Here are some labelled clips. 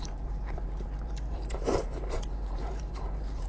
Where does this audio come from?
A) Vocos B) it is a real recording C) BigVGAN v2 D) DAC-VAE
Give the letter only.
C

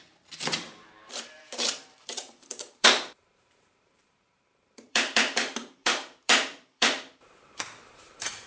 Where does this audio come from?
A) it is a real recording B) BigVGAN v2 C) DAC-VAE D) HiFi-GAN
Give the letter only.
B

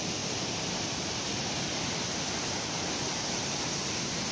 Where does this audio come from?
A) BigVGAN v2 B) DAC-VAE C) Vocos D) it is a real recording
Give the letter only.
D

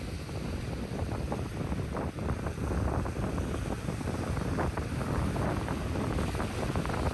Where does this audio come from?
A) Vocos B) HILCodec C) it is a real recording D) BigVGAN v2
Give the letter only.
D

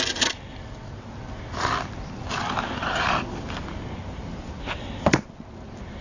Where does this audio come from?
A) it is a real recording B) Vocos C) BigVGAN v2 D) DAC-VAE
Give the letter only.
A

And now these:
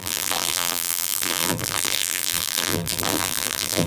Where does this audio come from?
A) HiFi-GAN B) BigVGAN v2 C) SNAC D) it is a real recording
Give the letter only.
B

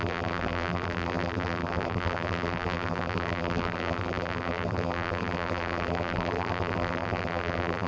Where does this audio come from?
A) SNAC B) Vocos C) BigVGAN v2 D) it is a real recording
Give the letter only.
C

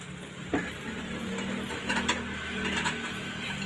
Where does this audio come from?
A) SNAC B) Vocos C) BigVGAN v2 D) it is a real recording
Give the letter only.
D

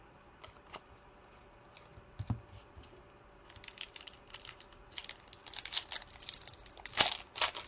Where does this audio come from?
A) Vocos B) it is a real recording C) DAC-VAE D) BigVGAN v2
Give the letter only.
B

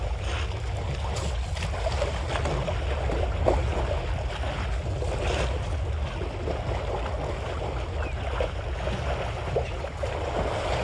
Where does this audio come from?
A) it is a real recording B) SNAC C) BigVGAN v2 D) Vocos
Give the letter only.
A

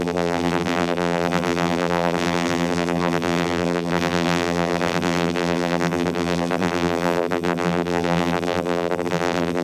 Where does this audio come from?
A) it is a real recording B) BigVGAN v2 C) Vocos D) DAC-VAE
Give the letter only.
B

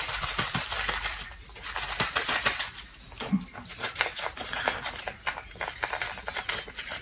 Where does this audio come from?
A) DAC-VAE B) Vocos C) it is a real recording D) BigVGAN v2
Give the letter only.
D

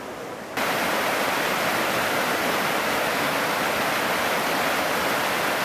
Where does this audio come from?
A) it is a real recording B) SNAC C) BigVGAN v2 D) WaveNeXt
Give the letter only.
A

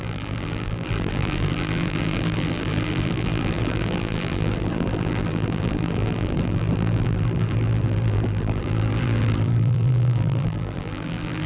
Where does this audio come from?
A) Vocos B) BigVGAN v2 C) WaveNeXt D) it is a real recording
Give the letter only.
B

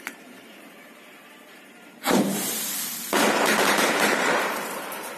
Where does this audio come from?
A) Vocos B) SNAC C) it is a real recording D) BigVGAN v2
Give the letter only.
D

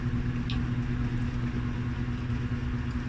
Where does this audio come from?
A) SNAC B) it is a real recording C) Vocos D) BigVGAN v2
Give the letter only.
B